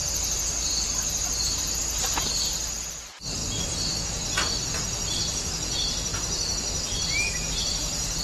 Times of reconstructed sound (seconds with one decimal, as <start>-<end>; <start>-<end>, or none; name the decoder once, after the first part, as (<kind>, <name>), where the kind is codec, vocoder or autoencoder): none